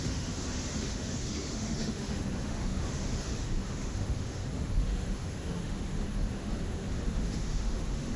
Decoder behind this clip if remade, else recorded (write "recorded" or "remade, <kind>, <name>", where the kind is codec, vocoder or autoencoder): remade, autoencoder, DAC-VAE